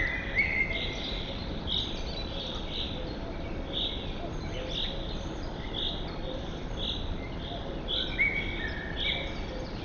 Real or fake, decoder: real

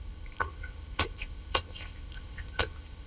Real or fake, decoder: fake, codec, ZipCodec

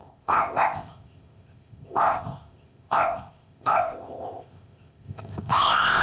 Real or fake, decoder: fake, codec, ZipCodec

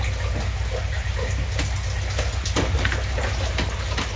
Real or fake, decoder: real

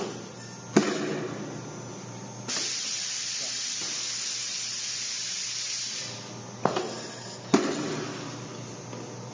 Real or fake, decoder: real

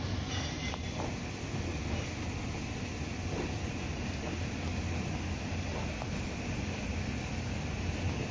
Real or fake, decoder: real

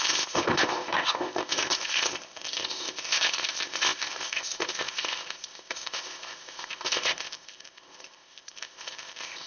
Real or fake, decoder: fake, codec, ZipCodec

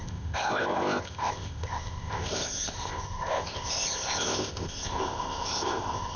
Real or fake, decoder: fake, codec, ZipCodec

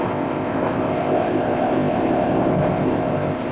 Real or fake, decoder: fake, codec, ZipCodec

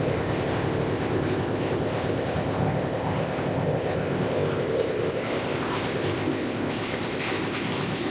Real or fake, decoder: fake, codec, ZipCodec